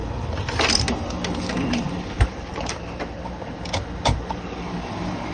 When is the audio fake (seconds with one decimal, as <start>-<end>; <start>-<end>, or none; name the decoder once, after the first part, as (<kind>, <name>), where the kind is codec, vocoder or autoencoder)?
2.2-5.3 (vocoder, BigVGAN v2)